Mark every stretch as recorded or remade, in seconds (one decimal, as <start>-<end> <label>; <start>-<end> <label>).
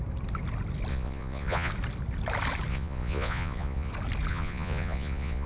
0.0-0.9 recorded; 0.9-1.7 remade; 1.7-2.7 recorded; 2.7-3.9 remade; 3.9-4.3 recorded; 4.3-5.5 remade